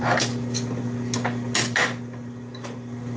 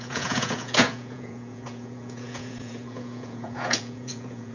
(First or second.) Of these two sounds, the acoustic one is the first